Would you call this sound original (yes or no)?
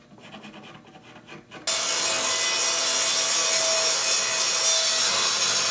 yes